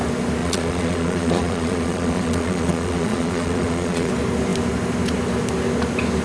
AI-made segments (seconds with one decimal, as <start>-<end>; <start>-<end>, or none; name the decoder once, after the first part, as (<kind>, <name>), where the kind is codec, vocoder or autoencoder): 0.4-4.1 (vocoder, Vocos)